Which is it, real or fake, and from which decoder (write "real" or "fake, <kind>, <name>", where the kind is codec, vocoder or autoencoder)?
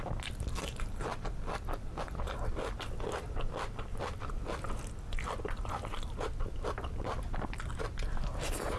real